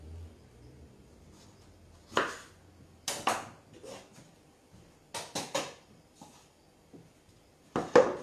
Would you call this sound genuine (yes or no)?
yes